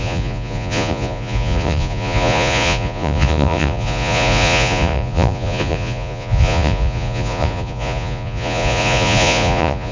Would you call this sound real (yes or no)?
no